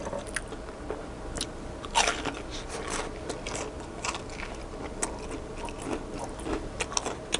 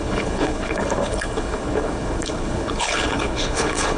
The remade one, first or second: second